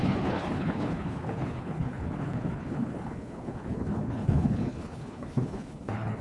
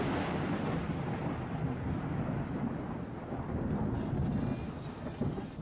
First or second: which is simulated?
first